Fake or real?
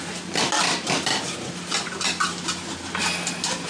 real